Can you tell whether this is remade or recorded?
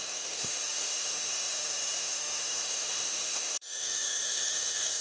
remade